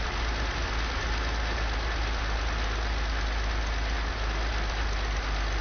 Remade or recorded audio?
recorded